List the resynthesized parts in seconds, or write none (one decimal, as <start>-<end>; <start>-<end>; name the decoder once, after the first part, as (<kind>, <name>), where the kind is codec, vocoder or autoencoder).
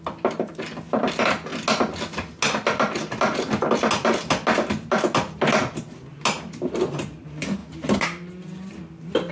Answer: none